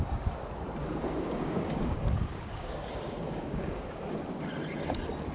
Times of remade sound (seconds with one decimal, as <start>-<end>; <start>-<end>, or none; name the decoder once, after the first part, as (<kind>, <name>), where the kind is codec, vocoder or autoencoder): 0.8-4.0 (codec, DAC)